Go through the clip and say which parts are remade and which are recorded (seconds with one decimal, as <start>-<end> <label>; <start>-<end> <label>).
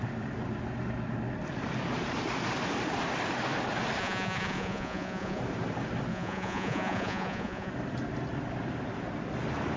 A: 0.0-4.0 recorded; 4.0-5.4 remade; 5.4-6.1 recorded; 6.1-7.7 remade; 7.7-9.8 recorded